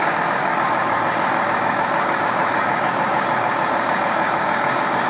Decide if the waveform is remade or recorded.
remade